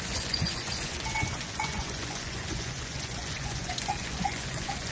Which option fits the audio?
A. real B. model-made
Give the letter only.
B